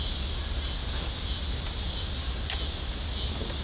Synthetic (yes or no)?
no